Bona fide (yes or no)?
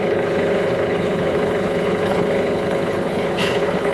no